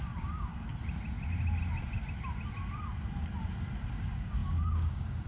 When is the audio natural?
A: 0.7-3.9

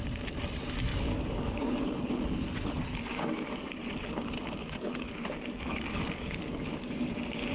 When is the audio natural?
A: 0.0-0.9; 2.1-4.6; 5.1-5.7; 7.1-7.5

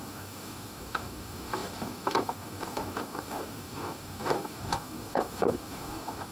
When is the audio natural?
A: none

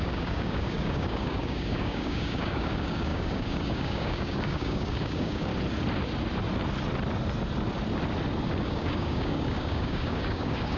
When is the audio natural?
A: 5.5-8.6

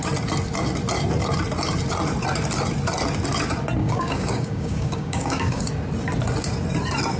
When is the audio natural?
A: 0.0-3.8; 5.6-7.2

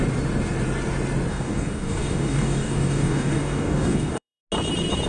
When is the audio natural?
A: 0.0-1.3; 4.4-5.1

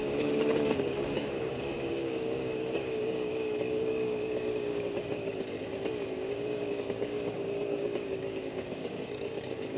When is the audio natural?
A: 5.7-6.3

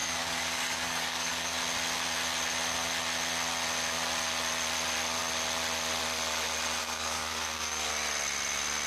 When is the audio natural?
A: 1.6-6.8; 7.9-8.9